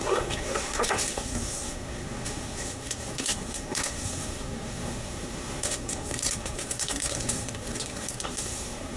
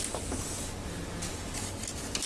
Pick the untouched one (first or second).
second